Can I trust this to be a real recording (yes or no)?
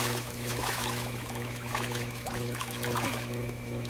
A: no